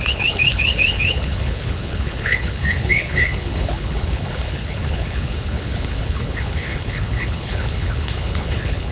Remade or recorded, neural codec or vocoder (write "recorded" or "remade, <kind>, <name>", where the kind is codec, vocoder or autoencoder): remade, codec, HILCodec